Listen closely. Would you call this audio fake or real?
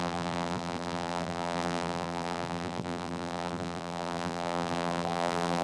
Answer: fake